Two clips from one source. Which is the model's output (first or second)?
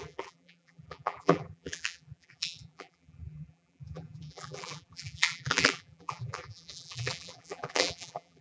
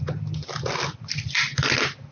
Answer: first